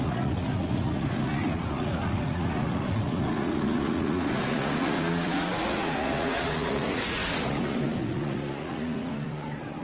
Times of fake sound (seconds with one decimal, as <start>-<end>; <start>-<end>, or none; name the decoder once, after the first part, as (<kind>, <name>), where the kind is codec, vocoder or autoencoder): 0.0-9.8 (vocoder, Vocos)